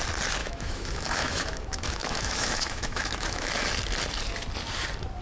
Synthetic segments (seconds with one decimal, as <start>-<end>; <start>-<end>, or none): 0.4-3.5